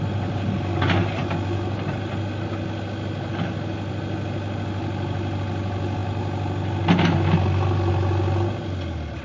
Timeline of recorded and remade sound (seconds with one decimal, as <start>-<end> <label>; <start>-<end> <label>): 0.0-9.2 recorded